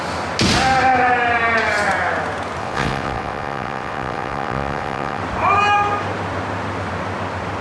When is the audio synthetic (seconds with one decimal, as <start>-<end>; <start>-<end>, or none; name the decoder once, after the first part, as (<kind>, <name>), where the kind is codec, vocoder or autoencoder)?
2.6-5.2 (vocoder, WaveNeXt)